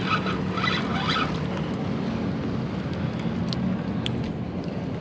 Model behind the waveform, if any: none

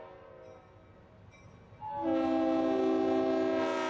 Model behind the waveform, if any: none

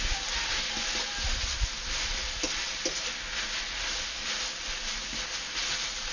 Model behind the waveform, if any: none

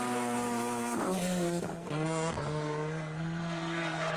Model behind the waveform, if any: codec, SNAC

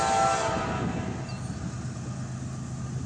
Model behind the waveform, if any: none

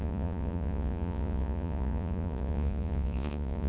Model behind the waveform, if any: vocoder, Vocos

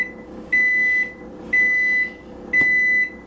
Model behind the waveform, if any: none